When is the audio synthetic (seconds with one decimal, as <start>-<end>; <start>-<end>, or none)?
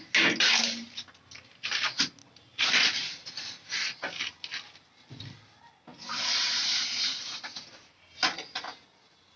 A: 5.9-8.2